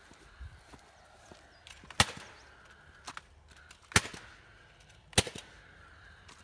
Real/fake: real